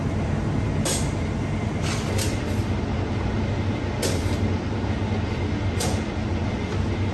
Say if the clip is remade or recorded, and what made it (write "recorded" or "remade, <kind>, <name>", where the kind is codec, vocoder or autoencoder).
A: recorded